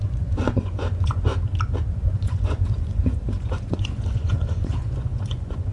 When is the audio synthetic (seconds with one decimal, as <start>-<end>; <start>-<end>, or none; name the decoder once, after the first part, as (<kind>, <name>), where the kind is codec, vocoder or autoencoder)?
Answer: 0.0-1.3 (vocoder, Vocos); 1.9-5.7